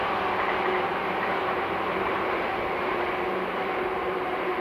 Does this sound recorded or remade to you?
remade